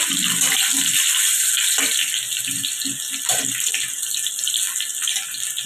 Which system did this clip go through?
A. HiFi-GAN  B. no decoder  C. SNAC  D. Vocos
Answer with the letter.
B